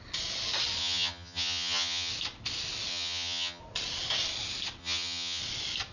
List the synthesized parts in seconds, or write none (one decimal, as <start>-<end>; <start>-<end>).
0.8-2.1; 2.9-3.6; 4.8-5.4